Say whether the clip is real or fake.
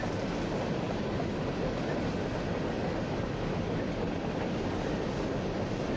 real